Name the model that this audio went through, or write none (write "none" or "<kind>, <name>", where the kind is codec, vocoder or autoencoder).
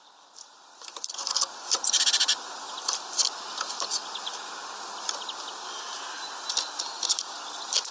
none